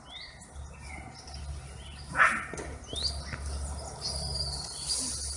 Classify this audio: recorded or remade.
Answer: recorded